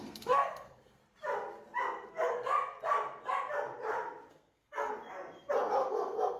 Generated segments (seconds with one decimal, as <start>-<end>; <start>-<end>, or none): 0.0-1.0; 2.1-2.5; 4.3-4.9; 5.9-6.4